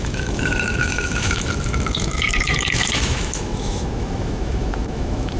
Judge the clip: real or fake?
fake